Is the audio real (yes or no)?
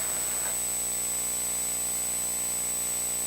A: yes